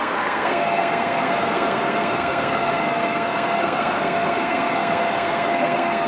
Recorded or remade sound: remade